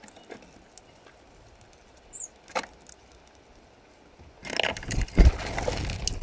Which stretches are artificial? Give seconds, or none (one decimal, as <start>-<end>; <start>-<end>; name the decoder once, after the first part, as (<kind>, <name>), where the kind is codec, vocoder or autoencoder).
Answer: none